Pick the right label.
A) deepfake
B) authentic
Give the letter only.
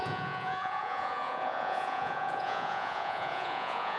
A